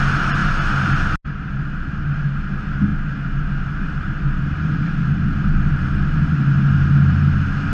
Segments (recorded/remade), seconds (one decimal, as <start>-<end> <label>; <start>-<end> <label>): 0.0-7.7 recorded

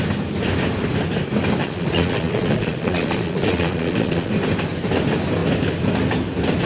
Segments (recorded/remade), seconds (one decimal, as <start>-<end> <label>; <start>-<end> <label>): 0.0-1.6 recorded; 1.6-4.3 remade; 4.3-6.7 recorded